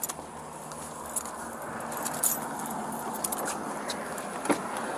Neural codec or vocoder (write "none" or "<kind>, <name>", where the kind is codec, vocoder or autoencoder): none